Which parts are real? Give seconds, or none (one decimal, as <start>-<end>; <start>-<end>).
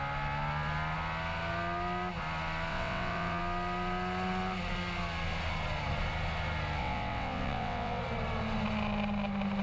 0.0-2.7; 3.4-6.8; 8.0-9.6